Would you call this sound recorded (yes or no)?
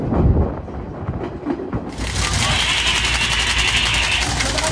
yes